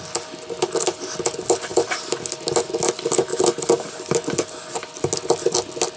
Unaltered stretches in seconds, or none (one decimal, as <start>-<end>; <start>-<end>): 0.0-6.0